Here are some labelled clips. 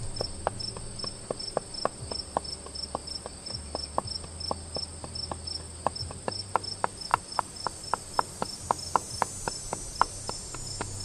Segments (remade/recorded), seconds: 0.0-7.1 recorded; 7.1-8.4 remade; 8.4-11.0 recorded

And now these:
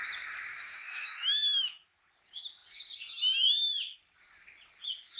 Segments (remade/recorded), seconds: 0.0-0.5 recorded; 0.5-2.0 remade; 2.0-5.2 recorded

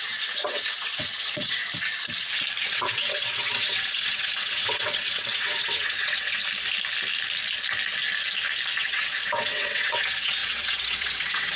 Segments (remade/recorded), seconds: 0.0-1.6 remade; 1.6-2.7 recorded; 2.7-6.4 remade; 6.4-8.8 recorded; 8.8-11.6 remade